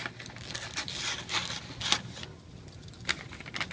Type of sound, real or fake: real